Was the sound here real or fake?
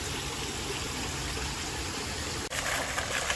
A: real